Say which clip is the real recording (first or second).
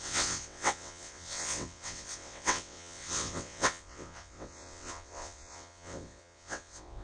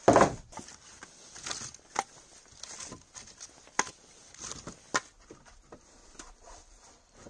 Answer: second